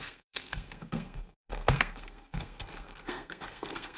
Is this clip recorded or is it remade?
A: remade